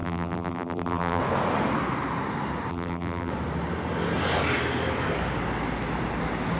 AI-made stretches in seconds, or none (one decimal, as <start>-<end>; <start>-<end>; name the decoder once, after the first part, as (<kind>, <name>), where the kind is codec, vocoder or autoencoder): 0.0-1.2 (vocoder, BigVGAN v2); 2.7-3.3